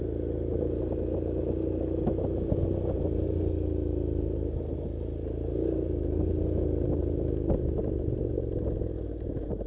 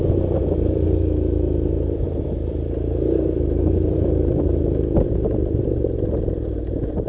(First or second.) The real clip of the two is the first